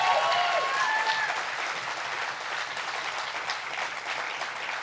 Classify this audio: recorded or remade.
recorded